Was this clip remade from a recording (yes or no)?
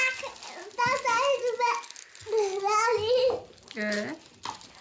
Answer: no